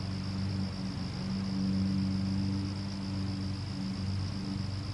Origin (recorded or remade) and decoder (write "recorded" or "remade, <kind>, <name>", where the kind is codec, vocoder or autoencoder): recorded